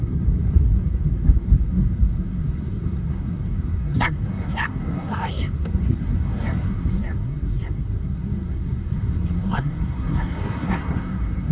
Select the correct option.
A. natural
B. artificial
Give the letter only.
B